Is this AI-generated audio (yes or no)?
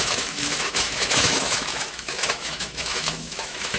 yes